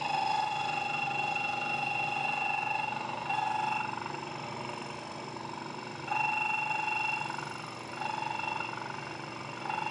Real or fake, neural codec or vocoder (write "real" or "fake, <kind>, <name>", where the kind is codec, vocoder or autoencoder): real